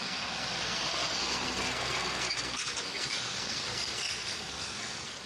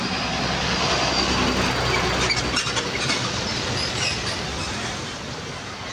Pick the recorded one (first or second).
second